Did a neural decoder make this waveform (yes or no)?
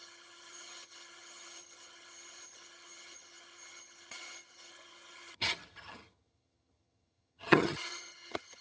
yes